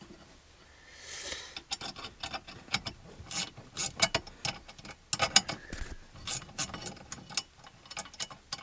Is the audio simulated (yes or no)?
no